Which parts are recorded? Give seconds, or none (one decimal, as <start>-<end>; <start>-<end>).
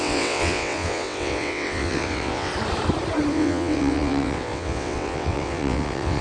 2.5-3.3